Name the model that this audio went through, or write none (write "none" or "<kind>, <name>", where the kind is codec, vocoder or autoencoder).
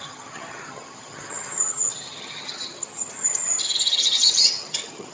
vocoder, HiFi-GAN